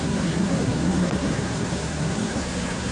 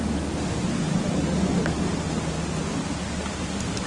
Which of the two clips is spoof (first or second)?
first